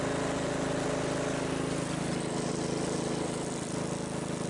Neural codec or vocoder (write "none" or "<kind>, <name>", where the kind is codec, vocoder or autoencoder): none